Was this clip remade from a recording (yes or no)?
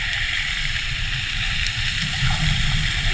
no